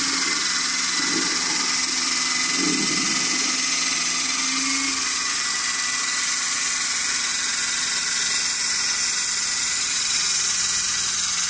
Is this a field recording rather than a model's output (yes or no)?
yes